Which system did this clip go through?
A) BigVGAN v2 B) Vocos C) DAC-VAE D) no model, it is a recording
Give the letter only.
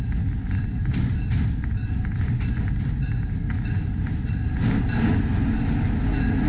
D